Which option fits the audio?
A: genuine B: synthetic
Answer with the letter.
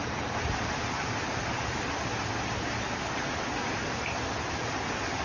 A